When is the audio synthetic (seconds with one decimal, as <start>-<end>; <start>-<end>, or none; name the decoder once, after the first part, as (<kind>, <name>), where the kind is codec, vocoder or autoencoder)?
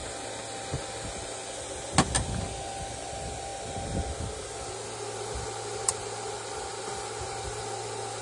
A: none